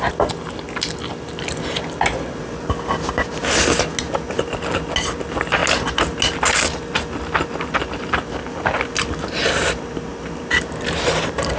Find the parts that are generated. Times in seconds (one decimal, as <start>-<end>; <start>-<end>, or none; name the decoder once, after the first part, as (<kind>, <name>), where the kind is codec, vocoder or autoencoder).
none